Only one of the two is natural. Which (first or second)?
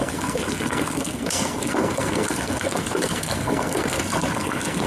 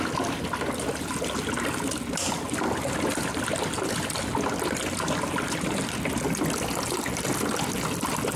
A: second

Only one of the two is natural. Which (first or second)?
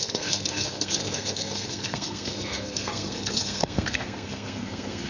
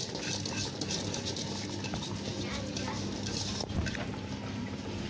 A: second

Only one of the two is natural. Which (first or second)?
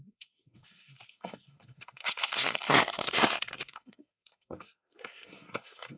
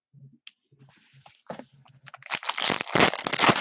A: second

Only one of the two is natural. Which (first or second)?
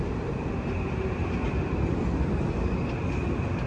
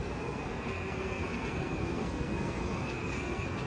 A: first